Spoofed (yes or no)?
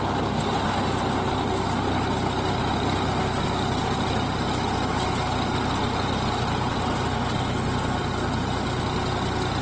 no